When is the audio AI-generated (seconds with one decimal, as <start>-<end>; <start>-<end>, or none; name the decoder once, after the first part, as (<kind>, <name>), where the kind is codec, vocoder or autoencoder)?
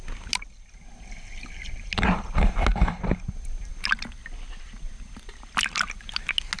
none